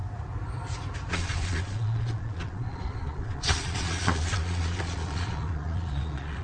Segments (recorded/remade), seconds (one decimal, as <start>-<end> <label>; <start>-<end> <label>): 0.0-1.1 recorded; 1.1-6.4 remade